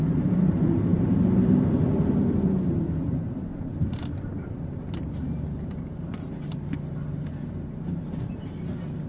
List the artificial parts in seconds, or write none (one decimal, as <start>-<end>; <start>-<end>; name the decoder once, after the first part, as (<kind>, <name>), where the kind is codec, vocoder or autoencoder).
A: 0.0-9.1 (vocoder, BigVGAN v2)

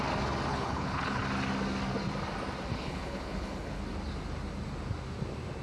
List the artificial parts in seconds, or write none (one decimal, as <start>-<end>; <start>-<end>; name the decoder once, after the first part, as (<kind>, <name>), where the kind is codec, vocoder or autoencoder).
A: 0.5-1.2 (codec, HILCodec); 2.7-3.8

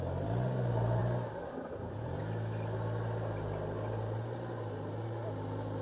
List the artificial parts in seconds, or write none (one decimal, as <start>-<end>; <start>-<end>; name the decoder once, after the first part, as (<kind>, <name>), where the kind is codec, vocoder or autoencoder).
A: none